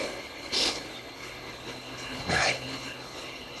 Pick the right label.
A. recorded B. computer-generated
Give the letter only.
B